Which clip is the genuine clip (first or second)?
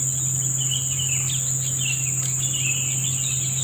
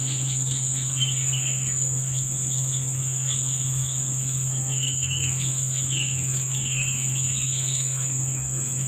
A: first